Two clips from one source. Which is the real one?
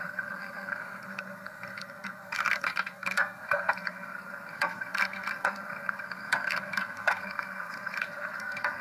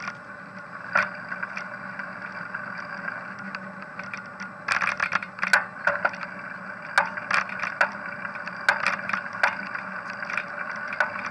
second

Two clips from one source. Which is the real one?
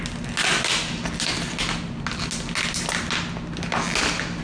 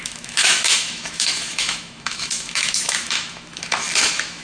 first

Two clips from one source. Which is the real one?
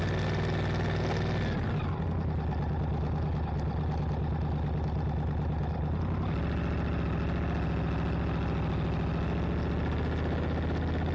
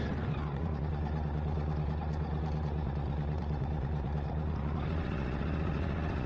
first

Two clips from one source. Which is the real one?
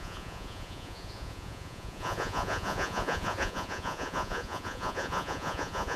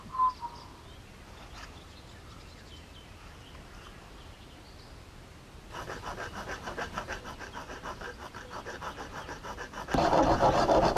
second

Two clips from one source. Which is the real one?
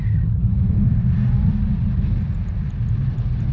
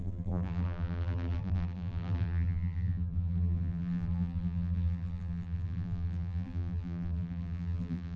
first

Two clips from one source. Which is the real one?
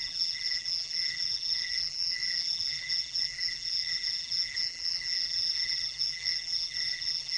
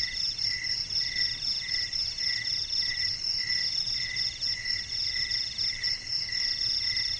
second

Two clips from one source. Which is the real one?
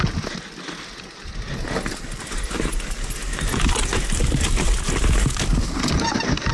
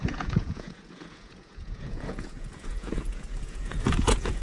first